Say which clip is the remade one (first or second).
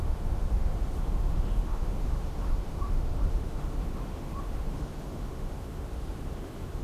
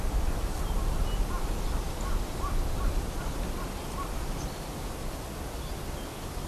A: first